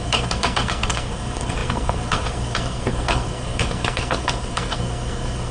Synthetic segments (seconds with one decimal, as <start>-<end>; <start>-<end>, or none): 0.0-5.5